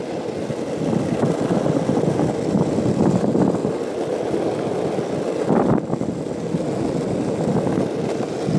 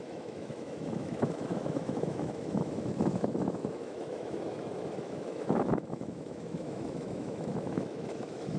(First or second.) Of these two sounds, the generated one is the second